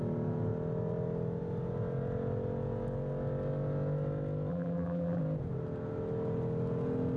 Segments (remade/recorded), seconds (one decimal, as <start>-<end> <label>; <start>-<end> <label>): 0.0-4.5 recorded; 4.5-5.2 remade; 5.2-7.2 recorded